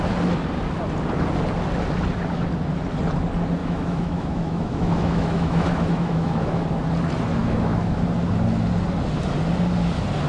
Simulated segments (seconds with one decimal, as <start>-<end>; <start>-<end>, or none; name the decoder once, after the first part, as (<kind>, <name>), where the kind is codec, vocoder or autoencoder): 3.6-6.6 (autoencoder, DAC-VAE); 7.4-8.0